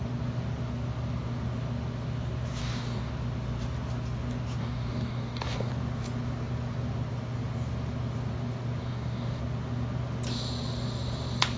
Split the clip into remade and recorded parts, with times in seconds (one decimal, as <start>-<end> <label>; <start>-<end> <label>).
0.0-2.6 recorded; 2.6-3.1 remade; 3.1-4.6 recorded; 4.6-5.7 remade; 5.7-8.8 recorded; 8.8-9.4 remade; 9.4-11.6 recorded

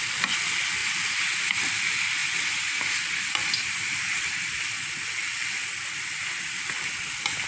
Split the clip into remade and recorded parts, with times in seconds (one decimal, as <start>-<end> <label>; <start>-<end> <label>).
0.0-0.8 recorded; 0.8-1.6 remade; 1.6-7.5 recorded

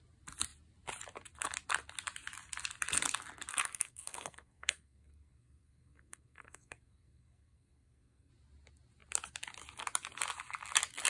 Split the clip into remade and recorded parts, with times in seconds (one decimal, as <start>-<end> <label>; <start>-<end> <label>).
0.0-3.5 recorded; 3.5-8.3 remade; 8.3-11.1 recorded

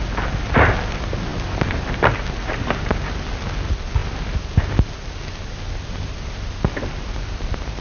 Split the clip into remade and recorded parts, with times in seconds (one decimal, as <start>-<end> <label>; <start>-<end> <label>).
0.0-7.8 recorded

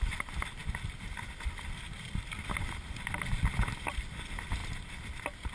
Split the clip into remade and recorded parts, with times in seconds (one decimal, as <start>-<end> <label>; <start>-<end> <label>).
0.0-5.5 recorded